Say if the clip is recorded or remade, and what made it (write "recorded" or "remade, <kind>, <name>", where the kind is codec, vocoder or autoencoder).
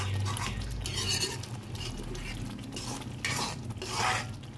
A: recorded